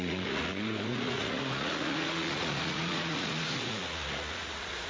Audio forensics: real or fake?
fake